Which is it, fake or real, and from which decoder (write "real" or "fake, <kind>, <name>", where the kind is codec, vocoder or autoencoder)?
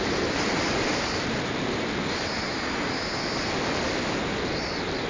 real